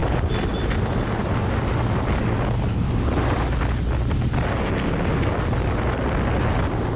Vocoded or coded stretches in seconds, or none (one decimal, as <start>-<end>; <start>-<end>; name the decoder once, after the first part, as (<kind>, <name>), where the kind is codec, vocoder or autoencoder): none